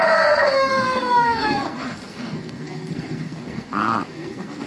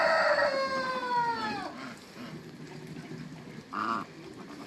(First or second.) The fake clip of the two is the first